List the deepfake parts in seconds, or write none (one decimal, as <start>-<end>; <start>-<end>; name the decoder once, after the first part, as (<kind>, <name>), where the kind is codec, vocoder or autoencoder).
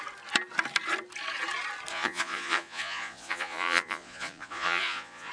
1.9-5.3 (vocoder, Vocos)